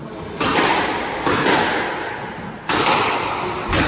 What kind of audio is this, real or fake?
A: real